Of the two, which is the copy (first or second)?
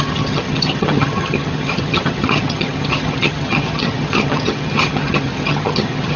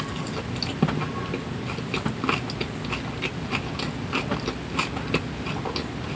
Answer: first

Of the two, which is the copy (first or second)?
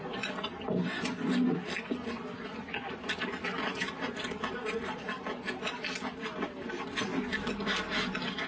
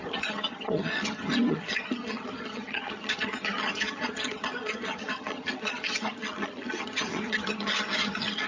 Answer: second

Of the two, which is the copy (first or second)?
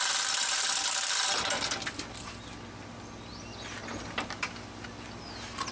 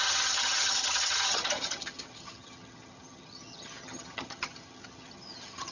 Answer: second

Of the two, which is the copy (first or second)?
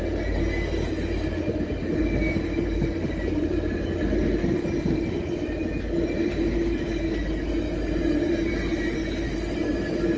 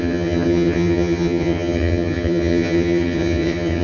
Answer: second